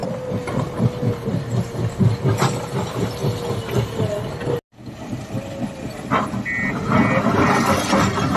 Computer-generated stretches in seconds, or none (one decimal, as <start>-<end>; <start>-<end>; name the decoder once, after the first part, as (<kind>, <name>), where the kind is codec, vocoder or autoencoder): none